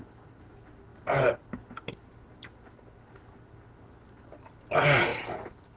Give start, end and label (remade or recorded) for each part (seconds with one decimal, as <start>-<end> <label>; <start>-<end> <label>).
0.0-5.8 recorded